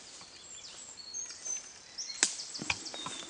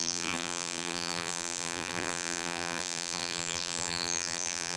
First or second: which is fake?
second